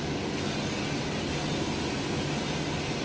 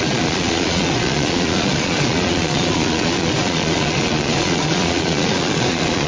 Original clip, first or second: first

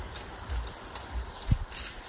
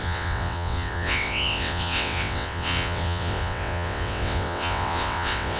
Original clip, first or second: first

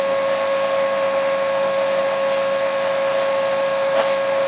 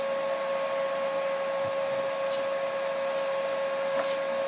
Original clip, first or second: second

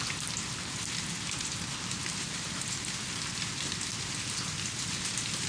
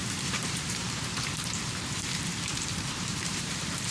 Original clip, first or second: first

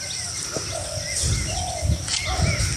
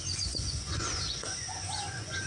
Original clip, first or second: first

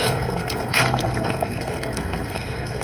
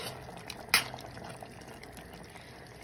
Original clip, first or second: second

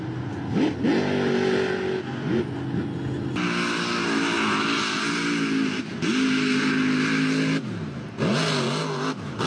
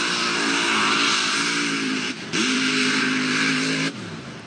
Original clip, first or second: first